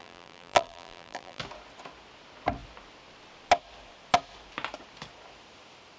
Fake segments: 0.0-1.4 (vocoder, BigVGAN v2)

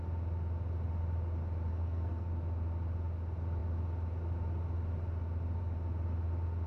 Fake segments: 1.7-2.3 (codec, SNAC)